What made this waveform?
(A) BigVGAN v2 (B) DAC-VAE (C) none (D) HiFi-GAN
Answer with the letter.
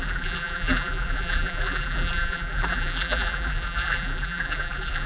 A